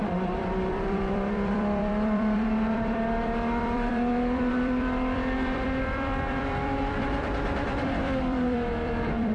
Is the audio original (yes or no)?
no